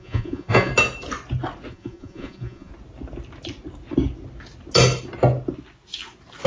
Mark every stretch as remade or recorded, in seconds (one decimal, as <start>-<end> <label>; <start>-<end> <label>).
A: 0.0-0.7 remade; 0.7-1.7 recorded; 1.7-2.7 remade; 2.7-6.5 recorded